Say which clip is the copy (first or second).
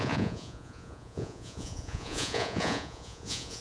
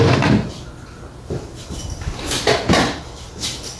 first